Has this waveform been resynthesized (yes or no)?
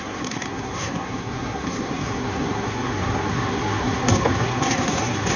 yes